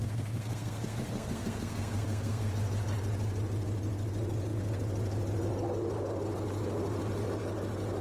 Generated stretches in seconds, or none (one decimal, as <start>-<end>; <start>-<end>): 0.0-2.5